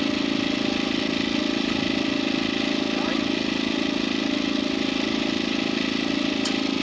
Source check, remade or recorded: recorded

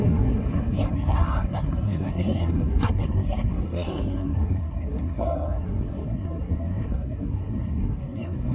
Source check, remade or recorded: remade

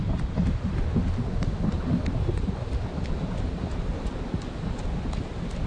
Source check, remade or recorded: recorded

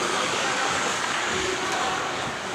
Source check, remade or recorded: remade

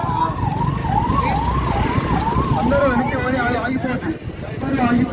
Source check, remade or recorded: recorded